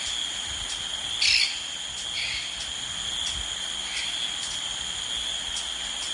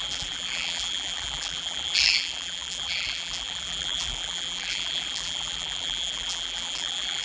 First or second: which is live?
first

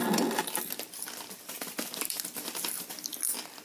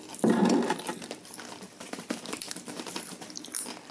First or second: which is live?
first